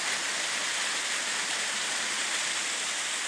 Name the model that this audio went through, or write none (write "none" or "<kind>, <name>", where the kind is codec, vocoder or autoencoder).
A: none